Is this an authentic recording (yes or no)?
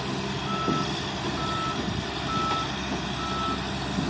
yes